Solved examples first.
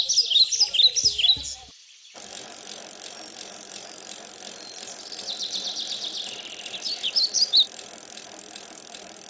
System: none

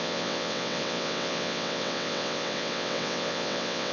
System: vocoder, WaveNeXt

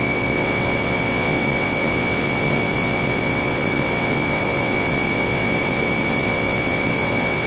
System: vocoder, WaveNeXt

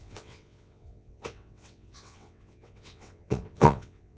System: vocoder, WaveNeXt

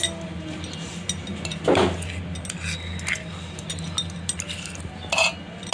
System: none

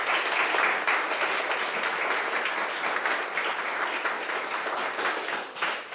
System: none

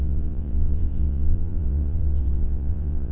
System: vocoder, WaveNeXt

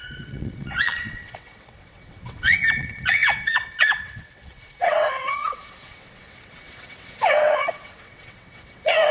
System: vocoder, WaveNeXt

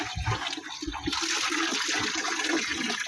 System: none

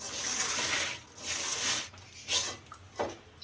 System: none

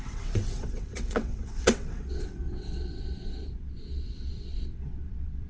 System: vocoder, WaveNeXt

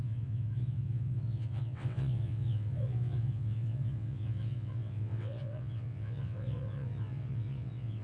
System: vocoder, WaveNeXt